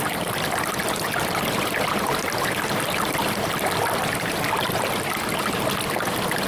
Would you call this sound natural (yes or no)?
yes